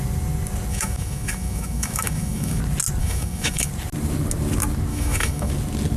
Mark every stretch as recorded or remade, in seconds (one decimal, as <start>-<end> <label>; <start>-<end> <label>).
0.0-0.7 recorded; 0.7-2.6 remade; 2.6-3.0 recorded; 3.0-3.7 remade; 3.7-4.9 recorded; 4.9-5.5 remade; 5.5-6.0 recorded